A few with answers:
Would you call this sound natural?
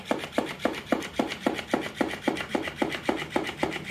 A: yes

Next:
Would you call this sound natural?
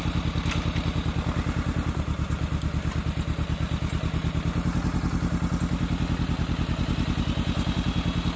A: yes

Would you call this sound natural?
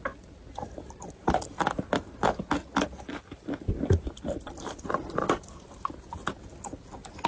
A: yes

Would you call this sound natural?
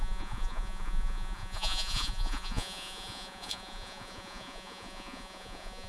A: no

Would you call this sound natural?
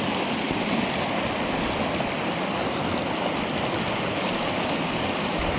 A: yes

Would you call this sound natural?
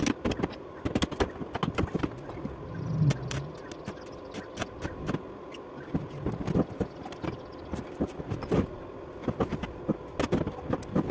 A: yes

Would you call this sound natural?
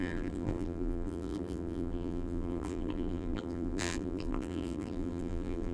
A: no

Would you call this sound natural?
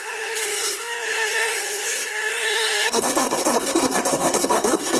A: no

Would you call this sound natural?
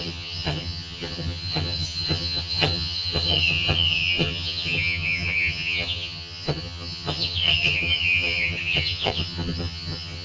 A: no